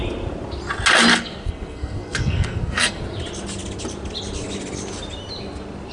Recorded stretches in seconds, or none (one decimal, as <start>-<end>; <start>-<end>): 0.0-1.1; 3.0-5.9